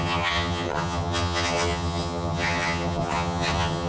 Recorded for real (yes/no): no